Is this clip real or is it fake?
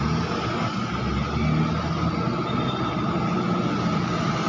real